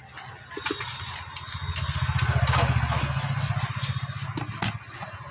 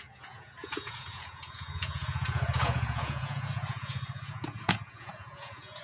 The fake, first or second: second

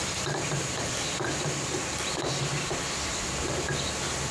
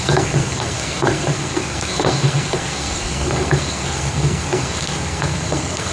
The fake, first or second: second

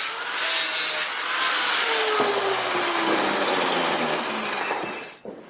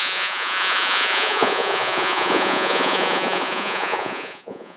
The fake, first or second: second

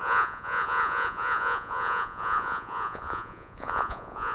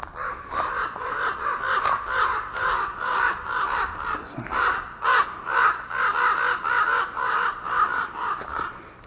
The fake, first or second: first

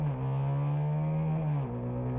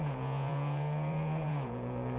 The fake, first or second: second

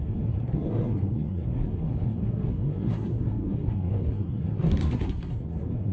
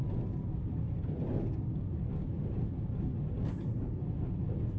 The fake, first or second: first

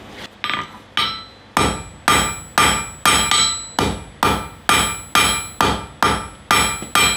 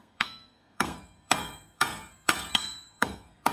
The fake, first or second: second